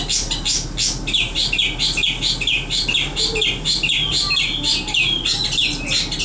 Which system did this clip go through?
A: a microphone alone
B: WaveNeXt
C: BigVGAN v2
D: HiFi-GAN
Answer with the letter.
A